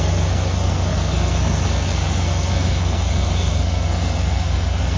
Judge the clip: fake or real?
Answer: fake